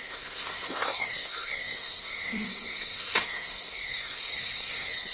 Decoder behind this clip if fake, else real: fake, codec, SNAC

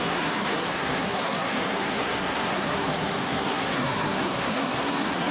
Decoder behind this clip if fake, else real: fake, codec, SNAC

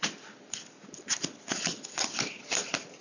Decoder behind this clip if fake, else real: real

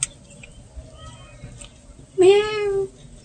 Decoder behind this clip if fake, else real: real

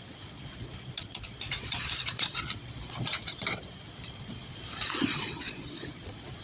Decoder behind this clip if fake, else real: fake, vocoder, Vocos